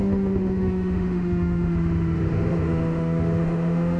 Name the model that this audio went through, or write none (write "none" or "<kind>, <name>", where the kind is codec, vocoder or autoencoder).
autoencoder, DAC-VAE